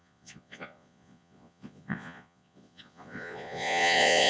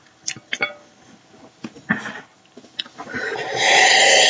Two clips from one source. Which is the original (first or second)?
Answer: second